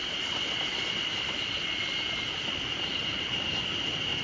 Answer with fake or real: real